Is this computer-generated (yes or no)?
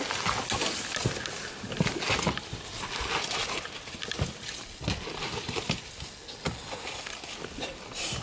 no